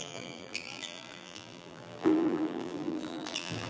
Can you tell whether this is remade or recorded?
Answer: remade